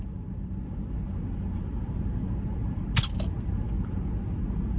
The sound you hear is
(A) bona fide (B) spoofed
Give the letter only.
A